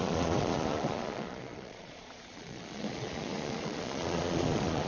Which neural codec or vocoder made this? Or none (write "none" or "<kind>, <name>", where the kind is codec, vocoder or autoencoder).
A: vocoder, Vocos